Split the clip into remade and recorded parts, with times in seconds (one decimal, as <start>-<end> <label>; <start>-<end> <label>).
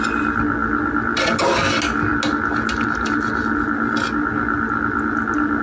0.0-5.6 recorded